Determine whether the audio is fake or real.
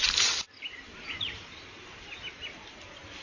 real